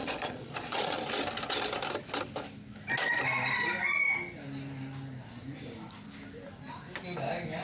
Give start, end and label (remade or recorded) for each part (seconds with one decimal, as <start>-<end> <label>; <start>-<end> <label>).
0.0-1.0 remade; 1.0-7.6 recorded